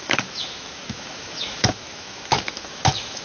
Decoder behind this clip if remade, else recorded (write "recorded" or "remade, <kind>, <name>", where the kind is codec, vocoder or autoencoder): remade, autoencoder, DAC-VAE